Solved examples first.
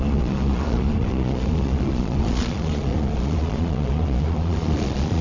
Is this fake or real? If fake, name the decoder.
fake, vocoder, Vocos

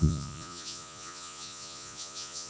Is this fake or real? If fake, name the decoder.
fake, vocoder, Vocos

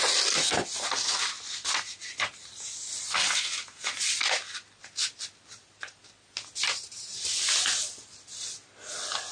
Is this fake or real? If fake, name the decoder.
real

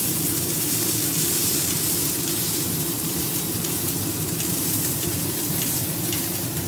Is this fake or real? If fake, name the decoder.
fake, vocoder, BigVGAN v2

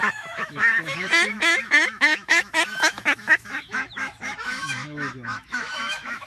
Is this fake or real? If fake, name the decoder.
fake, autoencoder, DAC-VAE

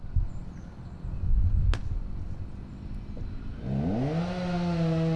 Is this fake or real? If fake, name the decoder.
real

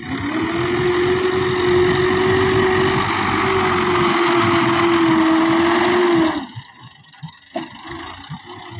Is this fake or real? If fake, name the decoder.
real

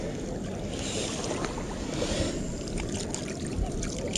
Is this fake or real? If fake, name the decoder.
real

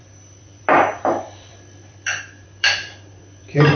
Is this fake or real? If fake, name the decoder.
fake, vocoder, BigVGAN v2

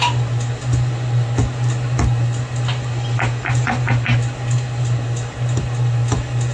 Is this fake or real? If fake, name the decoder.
real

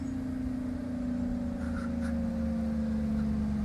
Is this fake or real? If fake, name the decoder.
real